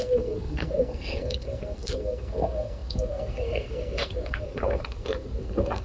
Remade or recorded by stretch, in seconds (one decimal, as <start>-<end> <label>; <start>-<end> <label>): 0.0-5.8 remade